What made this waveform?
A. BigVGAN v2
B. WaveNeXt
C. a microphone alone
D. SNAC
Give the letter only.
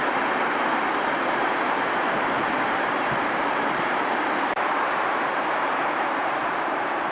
A